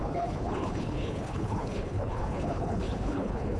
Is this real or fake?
fake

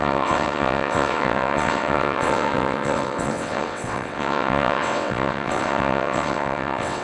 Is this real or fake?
fake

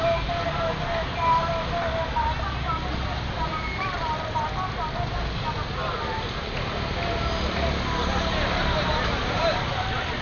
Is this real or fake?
real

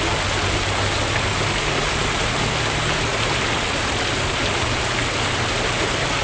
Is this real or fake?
real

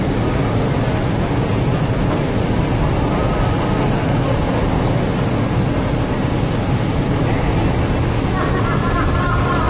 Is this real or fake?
real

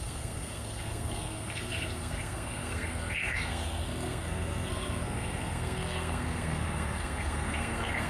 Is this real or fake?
fake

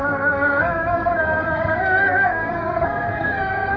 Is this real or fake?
fake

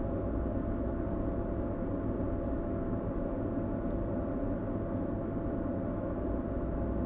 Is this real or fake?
real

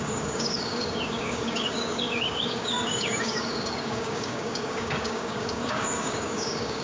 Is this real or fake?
fake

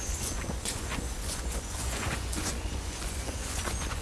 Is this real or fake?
fake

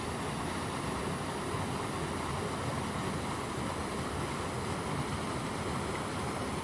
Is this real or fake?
real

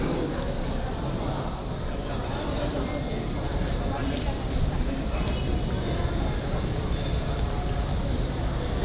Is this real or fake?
real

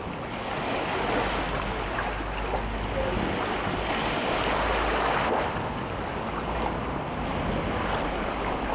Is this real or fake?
real